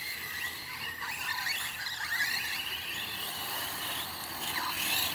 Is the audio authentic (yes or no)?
yes